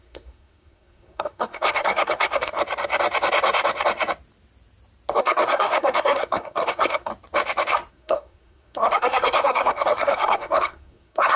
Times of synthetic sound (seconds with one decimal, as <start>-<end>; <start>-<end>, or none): 0.0-2.6; 5.2-7.1; 7.9-11.4